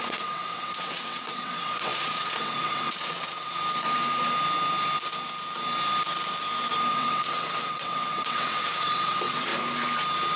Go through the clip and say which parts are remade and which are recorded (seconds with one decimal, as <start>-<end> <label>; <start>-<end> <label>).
0.0-3.6 remade; 3.6-6.9 recorded; 6.9-9.5 remade; 9.5-10.4 recorded